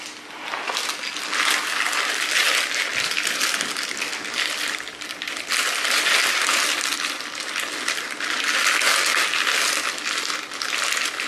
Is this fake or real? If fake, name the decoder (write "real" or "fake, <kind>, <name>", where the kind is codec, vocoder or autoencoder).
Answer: real